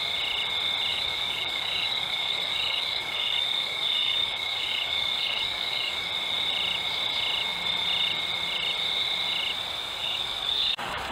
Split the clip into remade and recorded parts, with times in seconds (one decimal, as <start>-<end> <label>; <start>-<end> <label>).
0.0-0.9 recorded; 0.9-6.1 remade; 6.1-9.8 recorded; 9.8-11.1 remade